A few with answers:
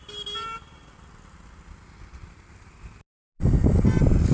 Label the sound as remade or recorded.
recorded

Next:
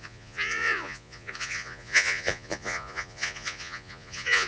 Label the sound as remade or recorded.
remade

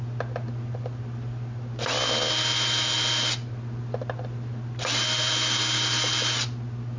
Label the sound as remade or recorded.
recorded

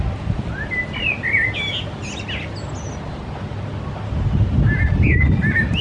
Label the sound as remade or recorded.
recorded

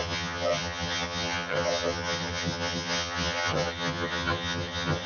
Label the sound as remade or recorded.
remade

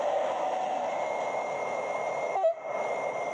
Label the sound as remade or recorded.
recorded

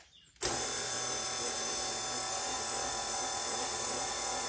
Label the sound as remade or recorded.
recorded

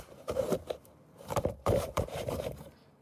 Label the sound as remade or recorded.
remade